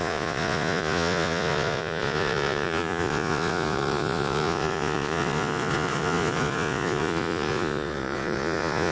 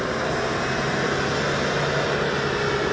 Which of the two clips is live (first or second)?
second